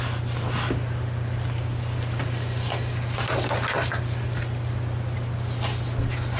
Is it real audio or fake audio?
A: real